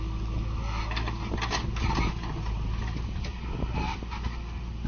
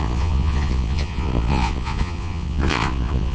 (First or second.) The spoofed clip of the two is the second